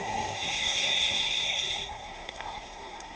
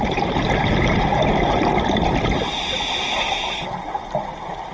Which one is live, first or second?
second